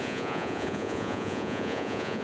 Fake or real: fake